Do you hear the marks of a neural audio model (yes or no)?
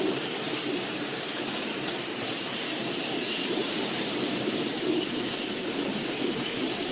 yes